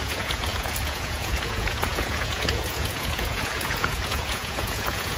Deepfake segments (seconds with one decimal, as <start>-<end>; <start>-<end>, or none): 0.0-5.2